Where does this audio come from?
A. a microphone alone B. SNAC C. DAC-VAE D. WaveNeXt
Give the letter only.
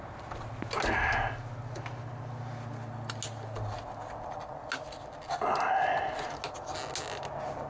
A